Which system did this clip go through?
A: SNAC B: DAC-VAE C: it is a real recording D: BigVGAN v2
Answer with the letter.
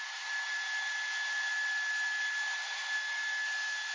C